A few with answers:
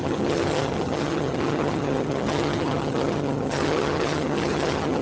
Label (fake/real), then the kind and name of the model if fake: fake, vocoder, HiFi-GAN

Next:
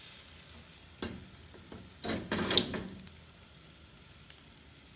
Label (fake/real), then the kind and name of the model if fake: real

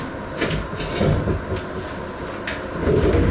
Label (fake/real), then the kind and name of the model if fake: real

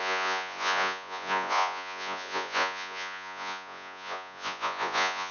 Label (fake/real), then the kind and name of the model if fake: fake, vocoder, Vocos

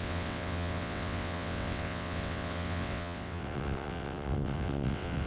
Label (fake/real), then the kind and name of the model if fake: fake, vocoder, WaveNeXt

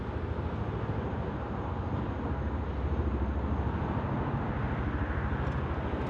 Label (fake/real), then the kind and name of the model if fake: real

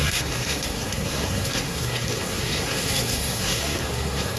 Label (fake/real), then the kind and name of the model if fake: fake, codec, SNAC